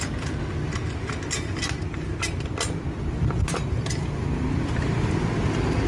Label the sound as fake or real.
real